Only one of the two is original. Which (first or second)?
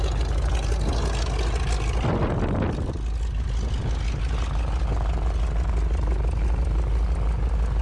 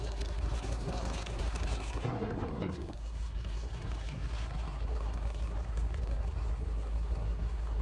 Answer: first